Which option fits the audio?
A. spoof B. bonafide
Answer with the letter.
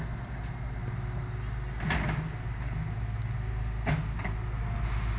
B